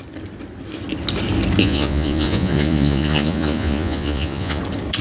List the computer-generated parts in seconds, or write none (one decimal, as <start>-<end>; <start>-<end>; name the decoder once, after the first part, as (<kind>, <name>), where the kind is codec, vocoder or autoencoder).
1.6-4.6 (vocoder, Vocos)